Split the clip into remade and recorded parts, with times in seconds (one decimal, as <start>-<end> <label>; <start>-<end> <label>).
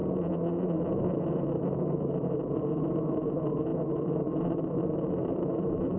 0.0-1.3 recorded; 1.3-6.0 remade